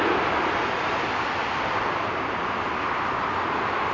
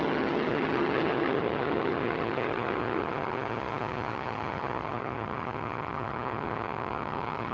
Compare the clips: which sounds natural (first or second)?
first